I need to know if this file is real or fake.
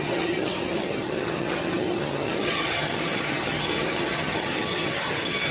fake